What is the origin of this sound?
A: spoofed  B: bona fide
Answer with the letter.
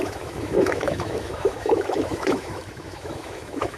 A